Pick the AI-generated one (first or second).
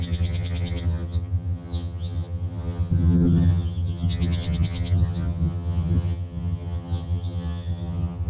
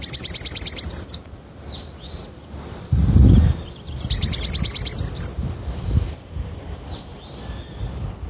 first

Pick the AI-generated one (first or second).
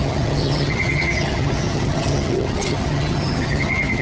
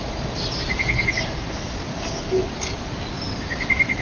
first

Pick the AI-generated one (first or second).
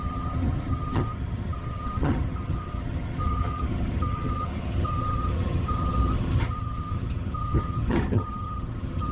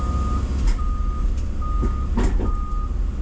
first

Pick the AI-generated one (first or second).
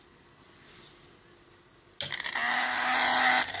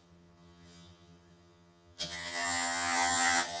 second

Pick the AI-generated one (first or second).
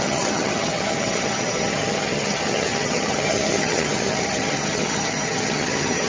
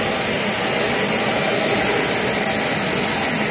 first